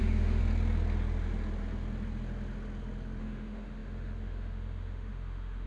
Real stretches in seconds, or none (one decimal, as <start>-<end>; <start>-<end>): 0.4-3.2